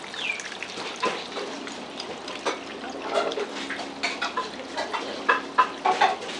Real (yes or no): yes